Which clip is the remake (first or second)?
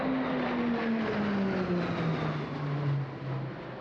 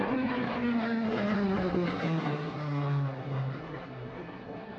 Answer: second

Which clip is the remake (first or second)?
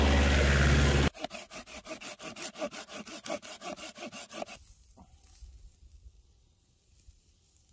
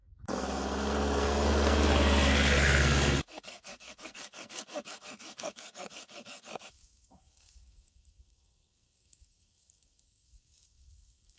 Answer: second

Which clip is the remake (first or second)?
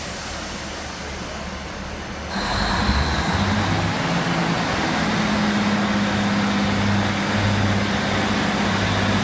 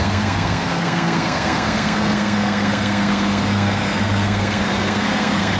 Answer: second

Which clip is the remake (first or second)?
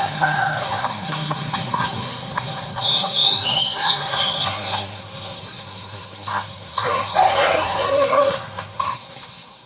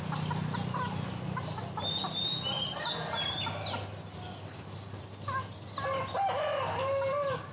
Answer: first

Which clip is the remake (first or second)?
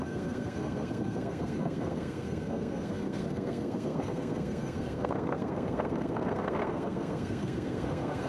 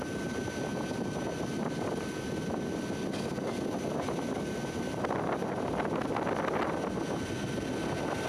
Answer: first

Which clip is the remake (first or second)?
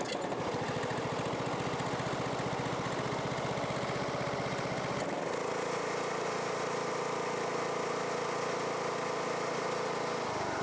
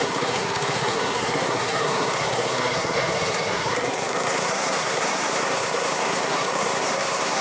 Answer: second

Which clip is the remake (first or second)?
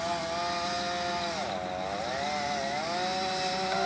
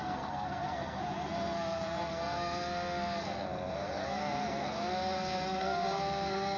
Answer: second